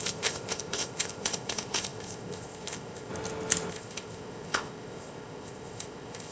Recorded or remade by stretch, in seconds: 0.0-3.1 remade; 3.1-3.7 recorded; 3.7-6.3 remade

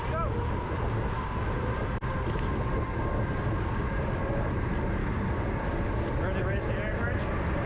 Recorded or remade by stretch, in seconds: 0.0-5.0 recorded; 5.0-5.7 remade; 5.7-7.7 recorded